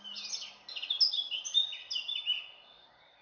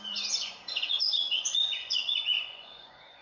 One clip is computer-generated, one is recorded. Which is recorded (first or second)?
first